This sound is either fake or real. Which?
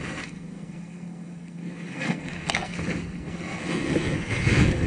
fake